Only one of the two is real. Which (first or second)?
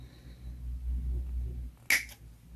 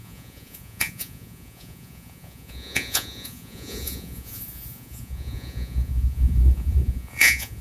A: first